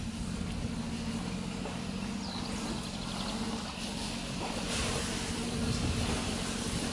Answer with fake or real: real